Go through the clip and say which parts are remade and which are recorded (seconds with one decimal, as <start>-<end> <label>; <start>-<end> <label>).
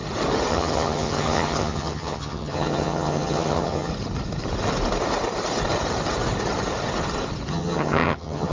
0.0-0.5 recorded; 0.5-3.9 remade; 3.9-7.5 recorded; 7.5-8.5 remade